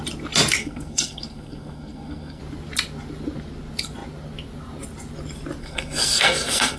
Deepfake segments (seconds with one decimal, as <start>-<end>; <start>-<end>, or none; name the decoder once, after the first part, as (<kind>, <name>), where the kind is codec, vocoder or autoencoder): 0.6-2.4 (codec, SNAC); 5.6-6.8